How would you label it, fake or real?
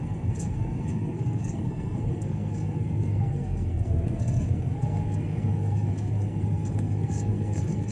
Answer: fake